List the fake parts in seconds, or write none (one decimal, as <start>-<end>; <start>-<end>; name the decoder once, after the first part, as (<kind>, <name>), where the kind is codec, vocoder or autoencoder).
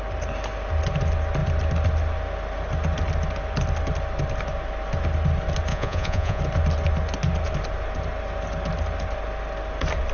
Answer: 5.7-6.4 (vocoder, Vocos)